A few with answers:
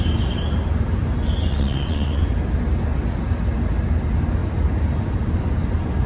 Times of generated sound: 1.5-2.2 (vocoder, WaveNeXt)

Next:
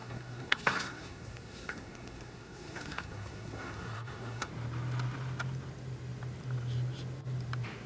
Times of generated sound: 0.0-4.5 (codec, SNAC)

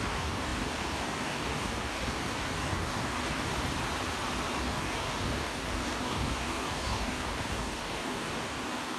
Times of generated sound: 0.0-3.5 (codec, DAC); 4.6-9.0

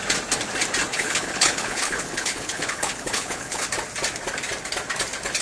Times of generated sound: 0.9-3.7 (codec, HILCodec)

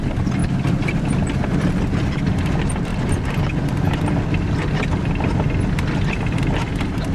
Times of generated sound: 0.4-1.0 (vocoder, BigVGAN v2); 2.9-3.4

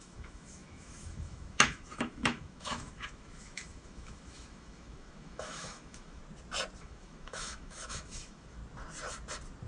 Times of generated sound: 0.0-6.2 (autoencoder, DAC-VAE); 6.8-8.6